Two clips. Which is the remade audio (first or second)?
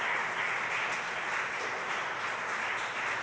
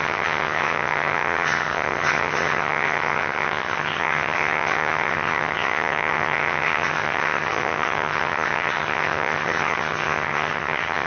second